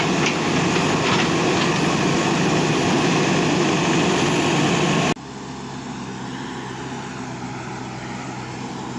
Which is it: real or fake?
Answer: real